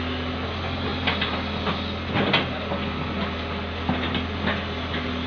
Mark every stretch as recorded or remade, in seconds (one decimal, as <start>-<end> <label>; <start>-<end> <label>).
0.0-5.3 recorded